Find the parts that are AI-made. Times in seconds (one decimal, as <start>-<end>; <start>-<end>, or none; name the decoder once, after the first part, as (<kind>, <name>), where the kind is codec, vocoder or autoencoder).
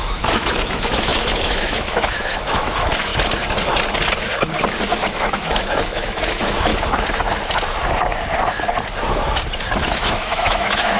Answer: 0.0-3.1 (autoencoder, DAC-VAE); 5.1-6.7; 9.9-11.0